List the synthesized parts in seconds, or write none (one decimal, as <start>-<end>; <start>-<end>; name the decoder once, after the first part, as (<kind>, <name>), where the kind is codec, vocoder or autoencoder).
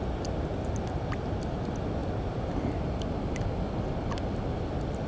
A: none